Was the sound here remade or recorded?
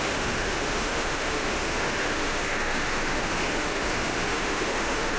remade